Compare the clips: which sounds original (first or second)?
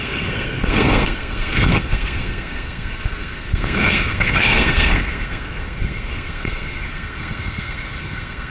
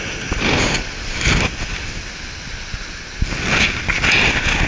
second